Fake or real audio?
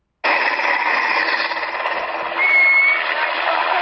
real